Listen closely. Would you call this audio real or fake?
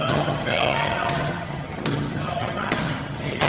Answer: fake